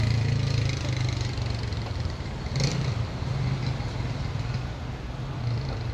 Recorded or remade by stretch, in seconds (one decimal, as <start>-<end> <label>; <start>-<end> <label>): 0.0-1.7 recorded; 1.7-2.3 remade; 2.3-2.7 recorded; 2.7-3.3 remade; 3.3-5.9 recorded